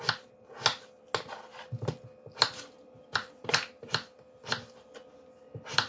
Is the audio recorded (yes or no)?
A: yes